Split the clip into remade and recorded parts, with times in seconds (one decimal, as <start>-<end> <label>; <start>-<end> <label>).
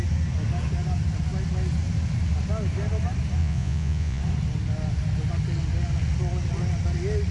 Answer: 0.0-3.4 recorded; 3.4-4.2 remade; 4.2-7.3 recorded